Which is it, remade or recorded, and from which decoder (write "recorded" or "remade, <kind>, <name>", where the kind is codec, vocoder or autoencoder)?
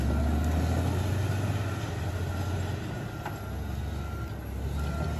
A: recorded